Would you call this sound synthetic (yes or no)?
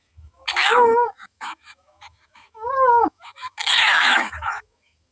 yes